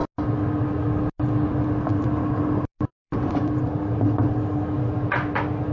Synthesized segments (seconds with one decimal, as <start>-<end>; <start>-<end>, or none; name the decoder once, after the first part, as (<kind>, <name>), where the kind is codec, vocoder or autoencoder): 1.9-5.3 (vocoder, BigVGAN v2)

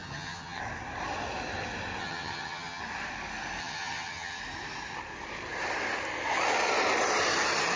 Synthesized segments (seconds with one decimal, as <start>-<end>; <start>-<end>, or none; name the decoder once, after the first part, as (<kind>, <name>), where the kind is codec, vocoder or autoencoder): 0.0-0.6 (vocoder, HiFi-GAN); 2.0-2.8; 3.6-4.4

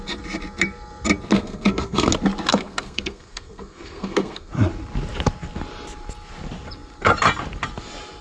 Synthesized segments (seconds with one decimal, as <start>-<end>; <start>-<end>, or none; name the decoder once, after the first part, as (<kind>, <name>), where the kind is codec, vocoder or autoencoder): 1.3-2.1 (codec, SNAC); 2.5-4.5

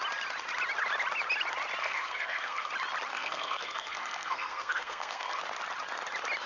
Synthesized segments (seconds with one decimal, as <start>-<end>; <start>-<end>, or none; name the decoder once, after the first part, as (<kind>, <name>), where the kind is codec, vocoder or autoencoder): 1.8-2.7 (codec, SNAC); 3.1-5.4